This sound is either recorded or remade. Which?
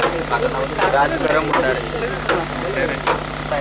recorded